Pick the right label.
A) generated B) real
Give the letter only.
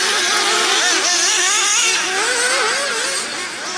B